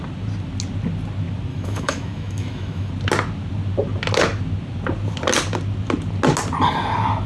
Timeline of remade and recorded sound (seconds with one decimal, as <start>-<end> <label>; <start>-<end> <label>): 0.0-1.5 recorded; 1.5-2.9 remade; 2.9-7.3 recorded